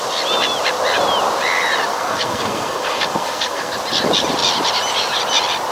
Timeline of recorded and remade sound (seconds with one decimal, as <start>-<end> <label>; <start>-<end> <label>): 0.0-1.9 recorded; 1.9-3.7 remade; 3.7-5.7 recorded